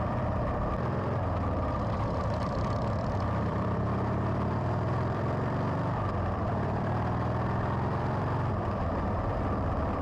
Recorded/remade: remade